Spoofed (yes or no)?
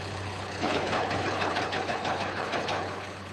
yes